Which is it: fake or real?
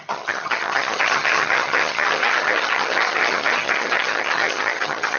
fake